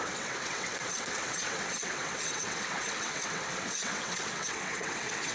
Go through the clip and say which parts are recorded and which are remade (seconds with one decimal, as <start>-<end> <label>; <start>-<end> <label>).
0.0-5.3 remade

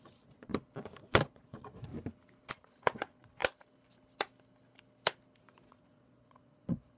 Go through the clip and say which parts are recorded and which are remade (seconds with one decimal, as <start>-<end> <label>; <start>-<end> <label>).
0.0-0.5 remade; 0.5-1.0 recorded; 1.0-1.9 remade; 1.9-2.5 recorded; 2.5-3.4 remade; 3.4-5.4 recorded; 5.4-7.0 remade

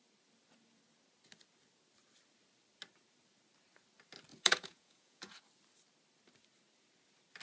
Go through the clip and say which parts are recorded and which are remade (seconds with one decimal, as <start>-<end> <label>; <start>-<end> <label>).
0.0-4.3 recorded; 4.3-5.4 remade; 5.4-7.4 recorded

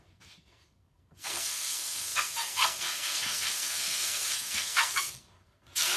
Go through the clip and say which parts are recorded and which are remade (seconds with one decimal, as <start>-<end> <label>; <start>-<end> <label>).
0.0-6.0 remade

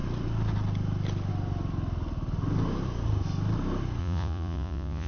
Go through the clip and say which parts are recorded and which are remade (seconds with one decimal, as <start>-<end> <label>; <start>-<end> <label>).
0.0-4.0 recorded; 4.0-5.1 remade

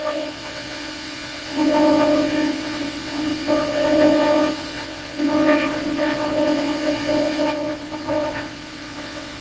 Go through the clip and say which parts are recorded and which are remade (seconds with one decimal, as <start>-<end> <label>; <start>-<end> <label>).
0.0-9.4 remade

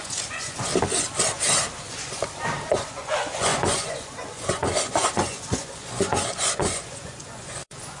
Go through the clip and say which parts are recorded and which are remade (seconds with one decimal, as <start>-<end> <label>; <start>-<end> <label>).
0.0-0.7 remade; 0.7-1.8 recorded; 1.8-2.2 remade; 2.2-2.7 recorded; 2.7-8.0 remade

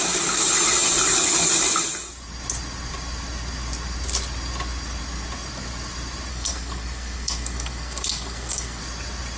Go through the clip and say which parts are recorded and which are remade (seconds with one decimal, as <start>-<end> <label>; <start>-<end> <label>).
0.0-6.3 recorded; 6.3-8.8 remade; 8.8-9.4 recorded